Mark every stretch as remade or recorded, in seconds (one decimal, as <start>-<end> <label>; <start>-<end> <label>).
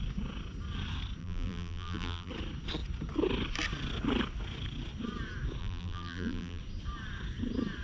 0.0-1.2 recorded; 1.2-2.3 remade; 2.3-5.6 recorded; 5.6-6.6 remade; 6.6-7.8 recorded